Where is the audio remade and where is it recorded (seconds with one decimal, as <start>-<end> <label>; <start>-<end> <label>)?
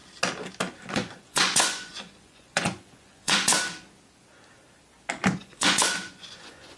0.0-0.9 recorded; 0.9-3.5 remade; 3.5-5.4 recorded; 5.4-6.8 remade